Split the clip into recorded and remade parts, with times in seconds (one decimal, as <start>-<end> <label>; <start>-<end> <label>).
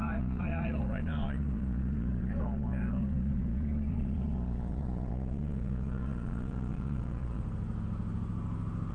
0.0-7.4 remade; 7.4-8.9 recorded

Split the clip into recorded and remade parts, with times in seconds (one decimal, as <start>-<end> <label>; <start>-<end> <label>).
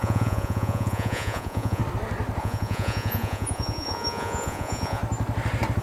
0.0-1.8 remade; 1.8-2.4 recorded; 2.4-5.0 remade; 5.0-5.8 recorded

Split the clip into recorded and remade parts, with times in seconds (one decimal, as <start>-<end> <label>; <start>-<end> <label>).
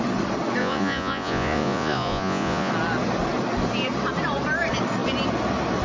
0.0-0.6 recorded; 0.6-2.7 remade; 2.7-5.8 recorded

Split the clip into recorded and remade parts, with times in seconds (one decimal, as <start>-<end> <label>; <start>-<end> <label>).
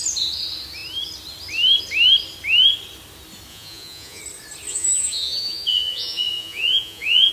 0.0-3.5 recorded; 3.5-4.2 remade; 4.2-4.7 recorded; 4.7-7.3 remade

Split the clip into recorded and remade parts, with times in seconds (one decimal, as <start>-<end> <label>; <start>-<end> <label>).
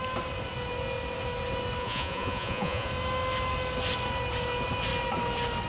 0.0-1.8 recorded; 1.8-2.9 remade; 2.9-5.7 recorded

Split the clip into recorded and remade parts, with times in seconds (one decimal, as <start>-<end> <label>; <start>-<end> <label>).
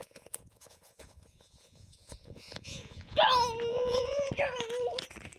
0.0-3.2 remade; 3.2-3.7 recorded; 3.7-4.3 remade; 4.3-5.4 recorded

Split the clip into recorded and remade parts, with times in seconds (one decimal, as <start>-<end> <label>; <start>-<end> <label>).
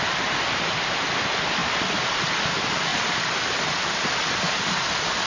0.0-5.3 recorded